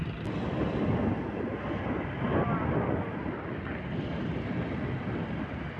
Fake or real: real